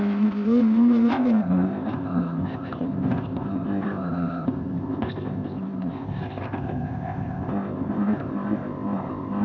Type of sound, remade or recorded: remade